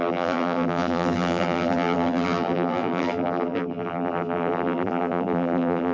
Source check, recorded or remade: remade